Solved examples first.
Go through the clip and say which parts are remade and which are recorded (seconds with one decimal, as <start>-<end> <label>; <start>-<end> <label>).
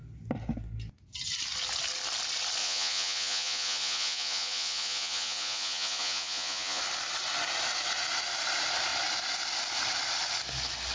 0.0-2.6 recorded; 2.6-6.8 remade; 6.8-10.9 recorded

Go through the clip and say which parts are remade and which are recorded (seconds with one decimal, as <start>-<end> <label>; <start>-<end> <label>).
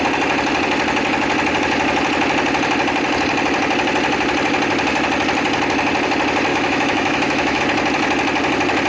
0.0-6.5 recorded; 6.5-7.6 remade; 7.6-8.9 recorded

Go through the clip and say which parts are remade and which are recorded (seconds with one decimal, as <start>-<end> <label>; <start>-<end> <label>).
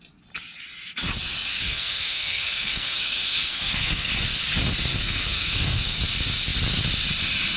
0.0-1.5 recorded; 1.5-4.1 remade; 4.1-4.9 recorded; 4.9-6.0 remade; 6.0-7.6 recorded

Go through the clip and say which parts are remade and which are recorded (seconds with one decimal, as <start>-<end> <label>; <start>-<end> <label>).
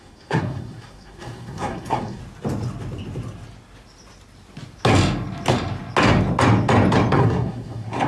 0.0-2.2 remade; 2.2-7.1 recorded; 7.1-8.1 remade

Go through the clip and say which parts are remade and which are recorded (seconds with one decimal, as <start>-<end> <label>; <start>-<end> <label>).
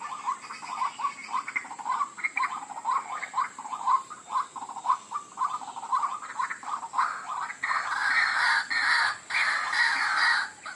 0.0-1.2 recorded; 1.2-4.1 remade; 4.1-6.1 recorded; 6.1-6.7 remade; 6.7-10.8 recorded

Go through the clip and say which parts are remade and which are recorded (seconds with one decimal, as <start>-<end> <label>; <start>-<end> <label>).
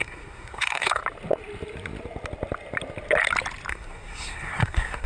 0.0-1.0 remade; 1.0-3.7 recorded; 3.7-5.1 remade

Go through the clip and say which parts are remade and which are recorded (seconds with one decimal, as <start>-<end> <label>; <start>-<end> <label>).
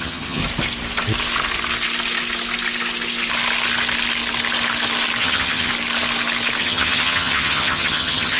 0.0-0.4 remade; 0.4-5.2 recorded; 5.2-5.7 remade; 5.7-6.6 recorded; 6.6-8.4 remade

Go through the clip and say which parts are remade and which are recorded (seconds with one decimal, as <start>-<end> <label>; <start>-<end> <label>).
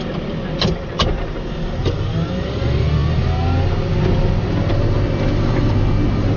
0.0-6.4 recorded